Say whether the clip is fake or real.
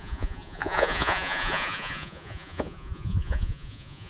fake